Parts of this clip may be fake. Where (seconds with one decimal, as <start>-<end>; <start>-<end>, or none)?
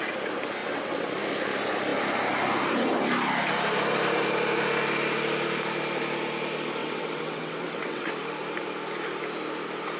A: 0.6-1.1; 6.8-8.1